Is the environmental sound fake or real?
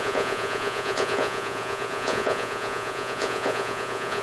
fake